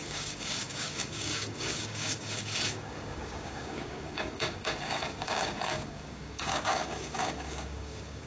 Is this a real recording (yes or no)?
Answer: no